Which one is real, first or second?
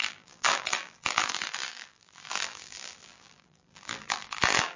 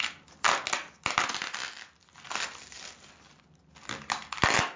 second